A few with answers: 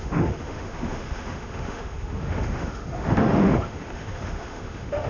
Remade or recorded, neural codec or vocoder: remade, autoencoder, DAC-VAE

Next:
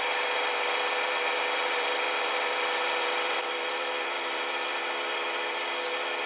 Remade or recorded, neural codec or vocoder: remade, vocoder, BigVGAN v2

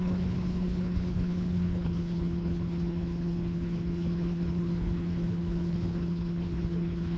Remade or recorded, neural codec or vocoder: remade, codec, HILCodec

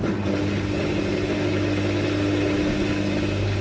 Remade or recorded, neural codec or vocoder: recorded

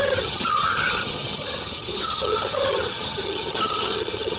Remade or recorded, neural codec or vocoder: remade, vocoder, HiFi-GAN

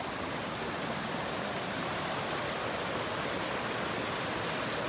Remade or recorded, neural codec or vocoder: recorded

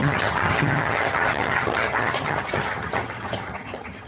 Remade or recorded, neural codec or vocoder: remade, vocoder, HiFi-GAN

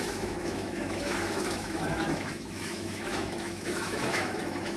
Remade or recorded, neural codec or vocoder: remade, autoencoder, DAC-VAE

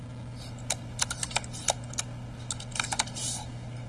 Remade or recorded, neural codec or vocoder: recorded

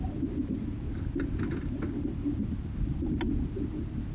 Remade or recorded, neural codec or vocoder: recorded